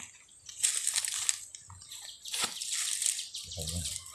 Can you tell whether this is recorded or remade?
recorded